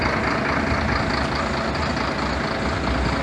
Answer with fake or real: real